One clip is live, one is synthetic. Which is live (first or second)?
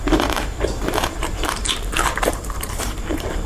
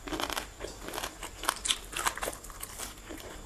second